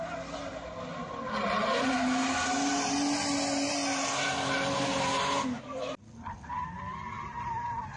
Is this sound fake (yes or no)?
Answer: no